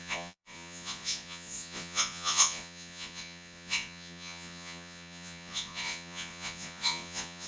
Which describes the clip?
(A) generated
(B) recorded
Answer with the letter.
A